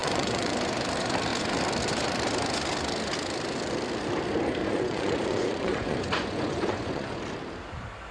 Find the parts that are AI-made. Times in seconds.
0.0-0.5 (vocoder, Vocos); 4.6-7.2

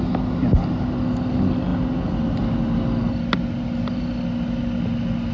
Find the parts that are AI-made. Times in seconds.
none